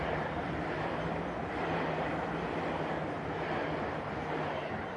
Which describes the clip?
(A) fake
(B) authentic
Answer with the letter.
B